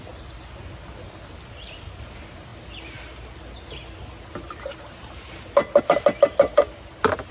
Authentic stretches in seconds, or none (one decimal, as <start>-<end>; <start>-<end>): 0.0-7.3